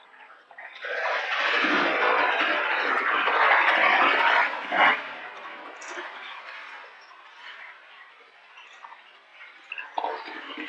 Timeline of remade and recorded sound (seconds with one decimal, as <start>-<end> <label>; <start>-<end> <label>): 0.0-10.7 recorded